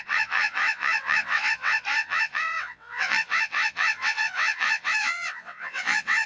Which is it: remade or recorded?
remade